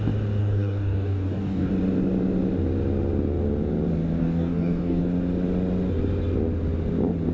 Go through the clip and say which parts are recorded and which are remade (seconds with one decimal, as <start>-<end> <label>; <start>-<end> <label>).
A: 0.0-0.4 recorded; 0.4-1.7 remade; 1.7-4.2 recorded; 4.2-5.0 remade; 5.0-7.3 recorded